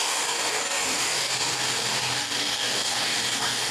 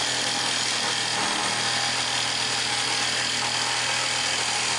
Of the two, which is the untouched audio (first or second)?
second